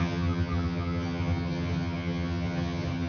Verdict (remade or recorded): remade